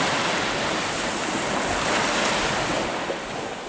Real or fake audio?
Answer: real